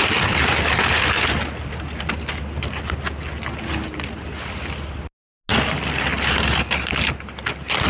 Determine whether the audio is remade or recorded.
recorded